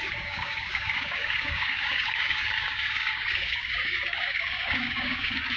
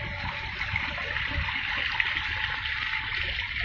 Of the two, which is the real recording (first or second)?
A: second